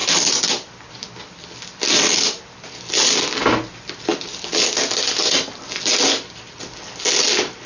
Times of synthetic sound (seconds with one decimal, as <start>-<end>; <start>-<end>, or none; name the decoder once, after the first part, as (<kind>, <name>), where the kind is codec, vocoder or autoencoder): none